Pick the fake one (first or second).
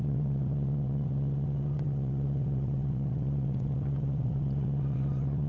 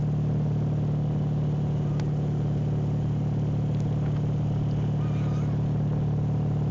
first